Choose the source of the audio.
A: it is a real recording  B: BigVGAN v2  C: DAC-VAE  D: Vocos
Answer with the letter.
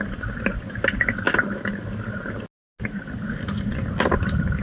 A